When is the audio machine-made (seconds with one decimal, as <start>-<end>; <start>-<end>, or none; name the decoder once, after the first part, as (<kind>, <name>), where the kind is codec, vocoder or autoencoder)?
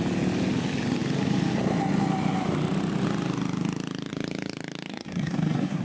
4.9-5.8 (codec, SNAC)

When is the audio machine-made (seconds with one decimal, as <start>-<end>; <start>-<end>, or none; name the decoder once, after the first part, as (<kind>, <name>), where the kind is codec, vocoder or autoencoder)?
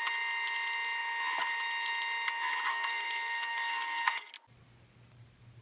2.7-4.3 (codec, SNAC)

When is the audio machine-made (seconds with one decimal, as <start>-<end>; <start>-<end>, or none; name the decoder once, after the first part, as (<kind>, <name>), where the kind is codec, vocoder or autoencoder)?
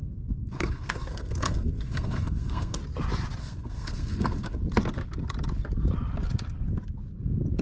0.0-2.8 (codec, SNAC); 3.4-4.6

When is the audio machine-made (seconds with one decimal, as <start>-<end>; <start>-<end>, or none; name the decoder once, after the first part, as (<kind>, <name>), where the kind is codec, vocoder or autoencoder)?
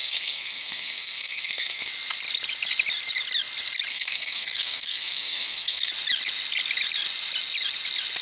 0.0-1.9 (codec, SNAC); 3.9-5.9